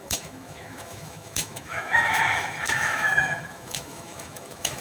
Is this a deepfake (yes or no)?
yes